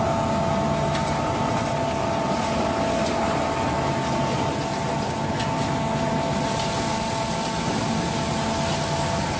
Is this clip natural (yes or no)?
yes